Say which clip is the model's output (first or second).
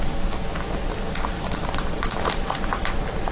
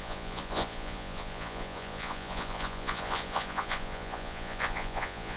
second